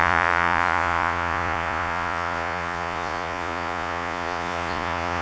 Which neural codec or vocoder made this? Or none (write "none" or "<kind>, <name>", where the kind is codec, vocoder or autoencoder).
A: vocoder, Vocos